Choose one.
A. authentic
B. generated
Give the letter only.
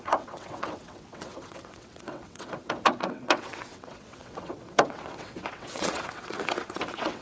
B